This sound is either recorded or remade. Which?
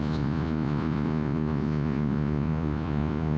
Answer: remade